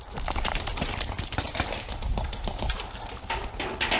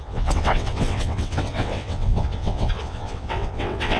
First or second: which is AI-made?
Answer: second